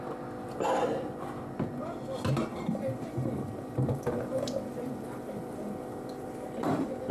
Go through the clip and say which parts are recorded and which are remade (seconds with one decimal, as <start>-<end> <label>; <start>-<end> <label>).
0.0-2.5 recorded; 2.5-7.1 remade